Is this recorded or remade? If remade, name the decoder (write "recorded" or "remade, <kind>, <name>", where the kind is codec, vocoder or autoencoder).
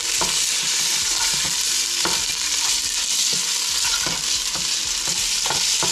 recorded